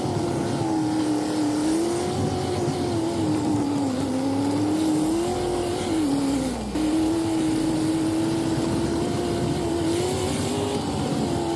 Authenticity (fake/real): real